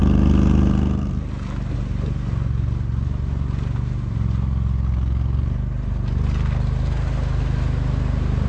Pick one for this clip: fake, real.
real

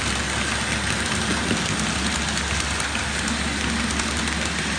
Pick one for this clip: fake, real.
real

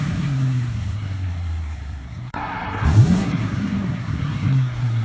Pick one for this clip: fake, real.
fake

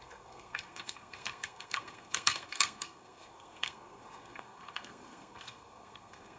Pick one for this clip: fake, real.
fake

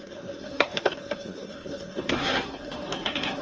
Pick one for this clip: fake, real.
fake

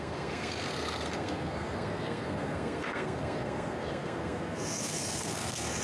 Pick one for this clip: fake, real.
fake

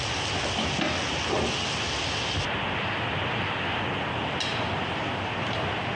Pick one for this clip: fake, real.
real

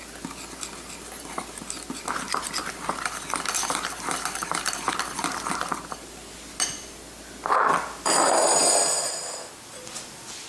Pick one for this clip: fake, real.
real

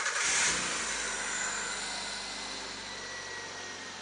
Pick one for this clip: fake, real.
real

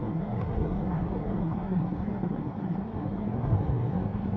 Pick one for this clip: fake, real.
fake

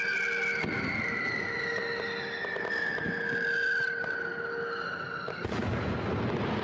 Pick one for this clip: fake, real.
real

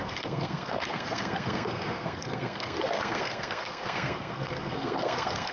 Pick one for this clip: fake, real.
fake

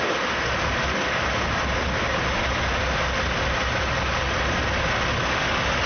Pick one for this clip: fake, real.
real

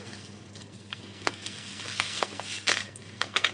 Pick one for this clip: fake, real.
fake